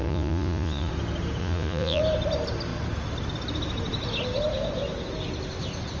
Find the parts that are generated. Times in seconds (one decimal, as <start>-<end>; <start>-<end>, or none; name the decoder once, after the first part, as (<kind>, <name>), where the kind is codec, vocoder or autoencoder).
0.0-0.9 (vocoder, Vocos); 1.4-2.0